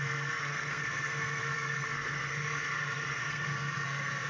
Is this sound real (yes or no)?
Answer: no